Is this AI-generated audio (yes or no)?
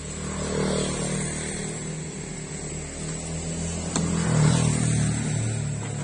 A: no